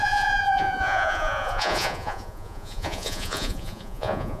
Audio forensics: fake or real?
fake